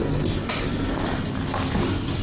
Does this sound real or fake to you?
real